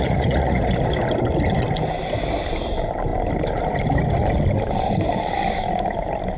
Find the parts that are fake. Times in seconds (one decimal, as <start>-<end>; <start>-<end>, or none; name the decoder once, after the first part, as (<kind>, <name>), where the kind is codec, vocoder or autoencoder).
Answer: 0.0-0.7 (vocoder, Vocos)